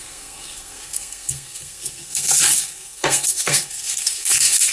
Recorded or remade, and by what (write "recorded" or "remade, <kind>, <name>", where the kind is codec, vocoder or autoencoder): remade, codec, SNAC